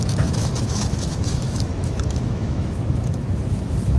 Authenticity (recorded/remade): remade